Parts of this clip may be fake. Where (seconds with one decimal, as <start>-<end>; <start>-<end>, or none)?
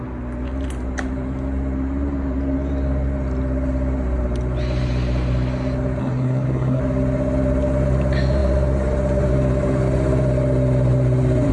6.0-6.8